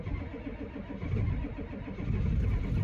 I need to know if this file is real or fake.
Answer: real